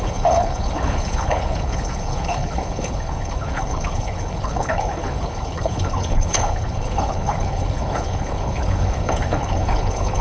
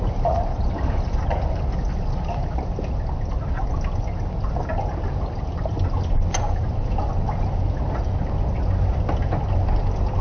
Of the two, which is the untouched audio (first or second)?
second